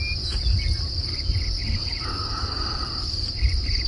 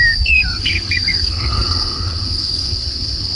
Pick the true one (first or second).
first